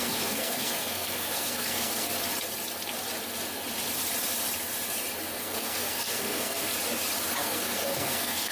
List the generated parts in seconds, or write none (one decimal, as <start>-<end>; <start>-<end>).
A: 0.0-2.1; 5.4-6.7; 7.4-8.5